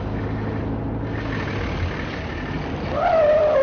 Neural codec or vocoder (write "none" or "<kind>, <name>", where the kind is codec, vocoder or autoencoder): none